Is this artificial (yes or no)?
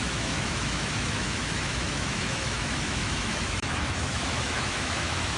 yes